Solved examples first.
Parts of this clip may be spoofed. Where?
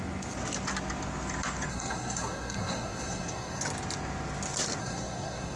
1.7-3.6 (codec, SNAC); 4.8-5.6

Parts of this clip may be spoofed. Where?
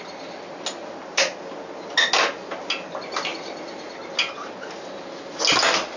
none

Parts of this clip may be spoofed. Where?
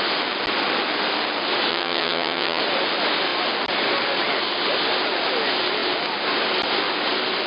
1.7-2.6 (vocoder, HiFi-GAN)